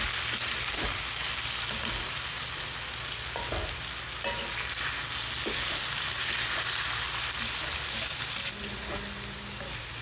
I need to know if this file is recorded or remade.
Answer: recorded